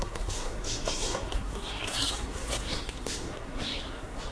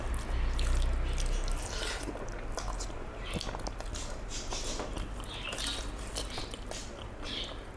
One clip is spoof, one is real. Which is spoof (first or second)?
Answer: first